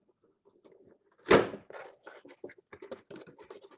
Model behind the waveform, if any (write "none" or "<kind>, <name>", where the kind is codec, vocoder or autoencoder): none